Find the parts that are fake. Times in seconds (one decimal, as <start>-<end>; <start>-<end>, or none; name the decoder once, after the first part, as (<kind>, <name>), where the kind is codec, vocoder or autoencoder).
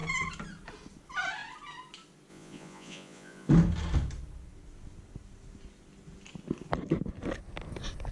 2.3-3.5 (vocoder, Vocos)